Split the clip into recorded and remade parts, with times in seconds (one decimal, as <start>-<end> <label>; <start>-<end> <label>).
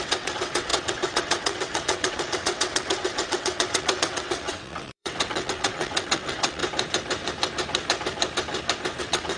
0.0-6.6 remade; 6.6-9.0 recorded; 9.0-9.4 remade